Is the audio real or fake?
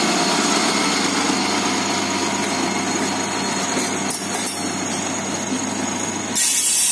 real